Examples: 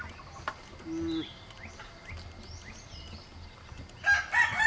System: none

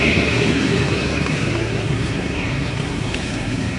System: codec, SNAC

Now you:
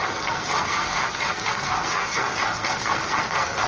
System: codec, SNAC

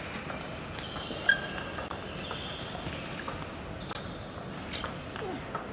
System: none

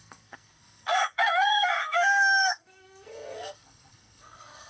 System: codec, SNAC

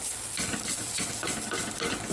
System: none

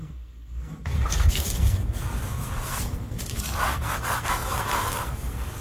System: codec, SNAC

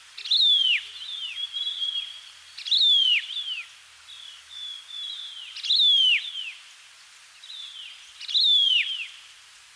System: none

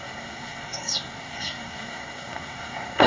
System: codec, SNAC